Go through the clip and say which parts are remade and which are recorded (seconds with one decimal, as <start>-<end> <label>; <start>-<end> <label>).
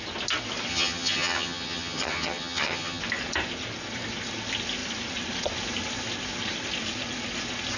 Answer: 0.0-0.7 recorded; 0.7-3.0 remade; 3.0-7.8 recorded